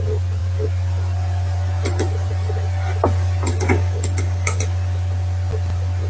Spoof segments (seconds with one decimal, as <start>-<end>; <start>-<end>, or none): 3.5-4.6